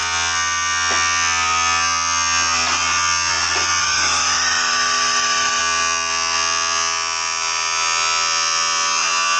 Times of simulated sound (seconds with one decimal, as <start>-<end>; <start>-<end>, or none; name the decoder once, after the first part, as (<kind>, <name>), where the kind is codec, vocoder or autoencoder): 3.8-5.6 (autoencoder, DAC-VAE)